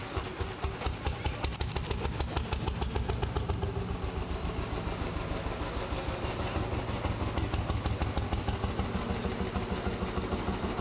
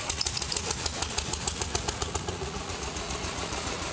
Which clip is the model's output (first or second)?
second